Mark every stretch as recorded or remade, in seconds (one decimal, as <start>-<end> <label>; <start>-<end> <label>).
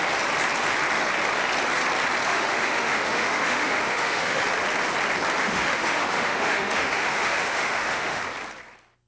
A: 0.0-2.3 recorded; 2.3-4.4 remade; 4.4-5.4 recorded; 5.4-8.2 remade; 8.2-9.1 recorded